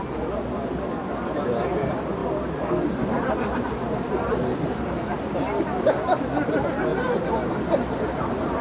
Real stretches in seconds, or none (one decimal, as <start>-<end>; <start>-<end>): 0.0-8.6